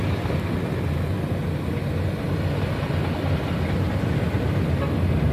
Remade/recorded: recorded